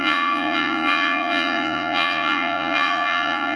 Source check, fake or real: fake